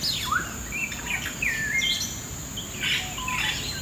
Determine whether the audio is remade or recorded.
recorded